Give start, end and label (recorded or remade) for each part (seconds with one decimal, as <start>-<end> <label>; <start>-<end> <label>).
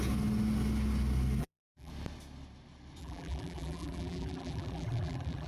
0.0-1.4 recorded; 1.4-1.9 remade; 1.9-3.0 recorded; 3.0-5.5 remade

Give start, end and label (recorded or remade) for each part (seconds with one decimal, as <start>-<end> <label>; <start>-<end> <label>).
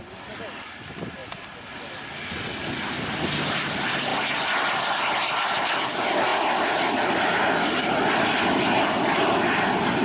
0.0-1.2 recorded; 1.2-1.9 remade; 1.9-4.1 recorded; 4.1-5.1 remade; 5.1-10.0 recorded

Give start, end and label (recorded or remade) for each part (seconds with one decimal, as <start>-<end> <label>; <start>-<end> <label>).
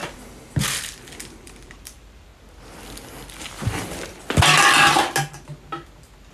0.0-1.4 recorded; 1.4-2.3 remade; 2.3-6.3 recorded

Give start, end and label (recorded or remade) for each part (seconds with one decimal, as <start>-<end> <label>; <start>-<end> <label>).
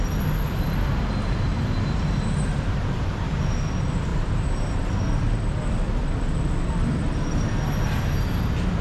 0.0-1.5 recorded; 1.5-3.4 remade; 3.4-4.1 recorded; 4.1-5.2 remade; 5.2-8.8 recorded